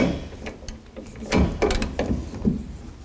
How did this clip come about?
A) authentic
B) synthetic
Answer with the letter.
A